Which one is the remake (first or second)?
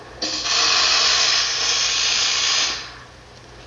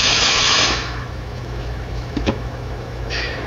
second